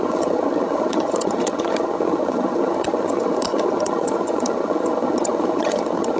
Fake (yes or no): yes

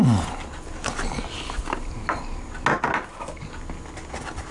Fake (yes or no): no